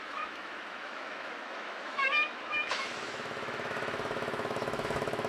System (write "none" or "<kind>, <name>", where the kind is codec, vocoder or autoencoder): autoencoder, DAC-VAE